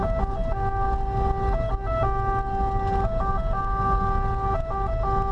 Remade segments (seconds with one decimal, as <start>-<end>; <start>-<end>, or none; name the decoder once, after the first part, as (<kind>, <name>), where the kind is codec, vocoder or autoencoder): none